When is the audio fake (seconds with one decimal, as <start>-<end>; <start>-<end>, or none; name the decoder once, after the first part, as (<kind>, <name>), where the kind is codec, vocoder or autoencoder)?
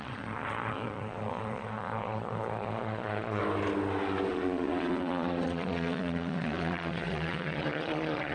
0.0-3.4 (vocoder, Vocos); 4.3-8.3